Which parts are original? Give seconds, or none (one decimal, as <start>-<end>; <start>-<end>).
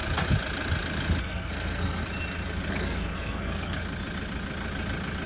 0.0-1.2; 2.0-2.7; 3.8-5.3